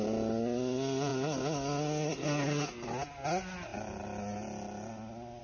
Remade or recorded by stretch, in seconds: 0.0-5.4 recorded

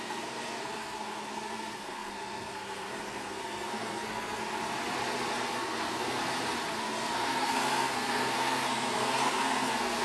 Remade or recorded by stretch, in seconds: 0.0-4.4 remade; 4.4-5.3 recorded; 5.3-6.2 remade; 6.2-6.8 recorded; 6.8-10.0 remade

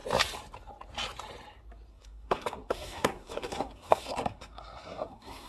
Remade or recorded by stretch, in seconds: 0.0-1.9 recorded; 1.9-5.5 remade